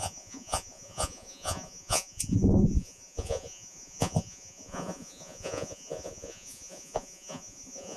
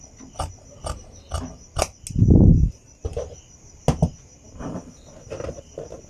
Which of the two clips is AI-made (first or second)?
first